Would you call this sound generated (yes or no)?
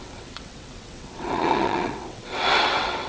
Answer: yes